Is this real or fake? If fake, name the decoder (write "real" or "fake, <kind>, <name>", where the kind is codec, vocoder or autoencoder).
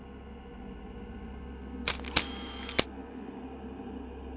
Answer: real